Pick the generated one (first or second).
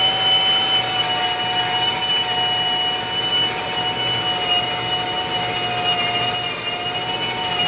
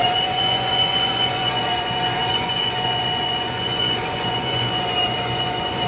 second